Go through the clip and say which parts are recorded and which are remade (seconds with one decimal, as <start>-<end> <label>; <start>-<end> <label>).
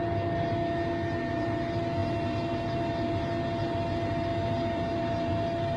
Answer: 0.0-5.8 recorded